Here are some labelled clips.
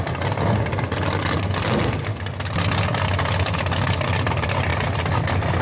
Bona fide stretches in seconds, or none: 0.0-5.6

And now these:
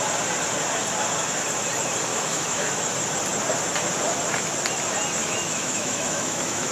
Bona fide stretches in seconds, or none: 0.0-2.1; 2.7-5.2

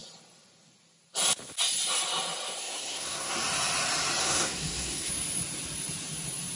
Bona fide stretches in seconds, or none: 0.0-2.6; 3.3-4.2; 5.1-6.6

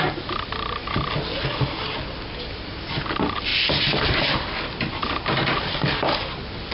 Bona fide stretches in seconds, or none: 0.0-6.7

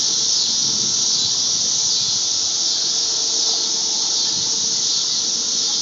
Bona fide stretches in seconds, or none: 0.0-5.8

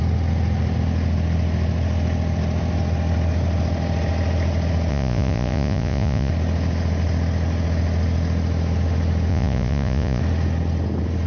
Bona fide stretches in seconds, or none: 0.0-4.9; 6.3-9.3; 10.2-11.3